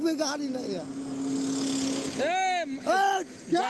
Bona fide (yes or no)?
yes